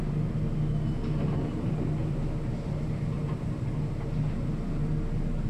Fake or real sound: real